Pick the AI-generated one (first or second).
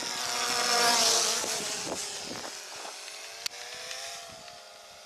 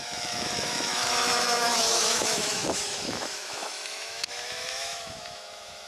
second